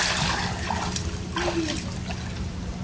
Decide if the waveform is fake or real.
real